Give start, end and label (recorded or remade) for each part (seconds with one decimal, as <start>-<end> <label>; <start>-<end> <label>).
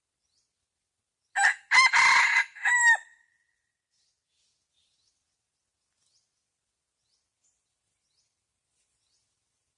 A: 0.0-9.8 recorded